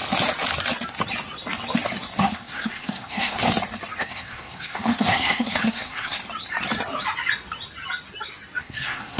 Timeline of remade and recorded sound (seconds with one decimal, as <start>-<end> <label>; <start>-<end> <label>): 0.0-2.2 recorded; 2.2-3.4 remade; 3.4-4.0 recorded; 4.0-6.2 remade; 6.2-8.6 recorded; 8.6-9.2 remade